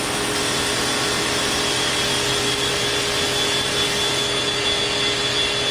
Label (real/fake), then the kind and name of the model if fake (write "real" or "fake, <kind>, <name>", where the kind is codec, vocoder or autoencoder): real